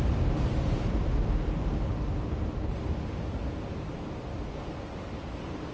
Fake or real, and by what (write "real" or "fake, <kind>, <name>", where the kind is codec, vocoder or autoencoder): real